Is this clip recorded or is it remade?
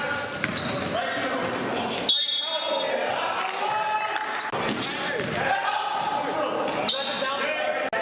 recorded